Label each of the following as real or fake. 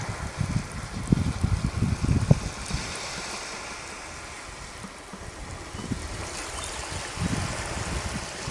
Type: real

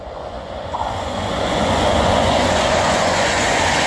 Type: fake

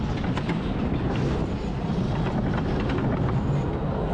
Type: real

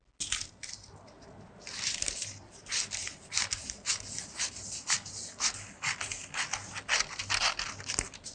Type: real